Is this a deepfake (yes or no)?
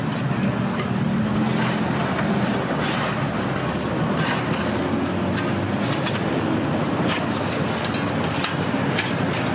no